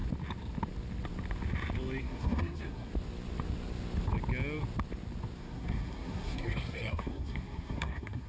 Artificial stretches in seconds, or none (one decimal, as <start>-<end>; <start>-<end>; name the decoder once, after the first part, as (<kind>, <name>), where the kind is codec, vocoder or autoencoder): 2.0-2.9 (codec, SNAC); 5.4-8.3

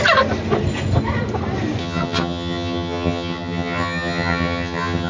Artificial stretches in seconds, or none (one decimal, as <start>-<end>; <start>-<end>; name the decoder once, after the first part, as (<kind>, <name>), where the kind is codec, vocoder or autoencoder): 1.8-5.1 (vocoder, HiFi-GAN)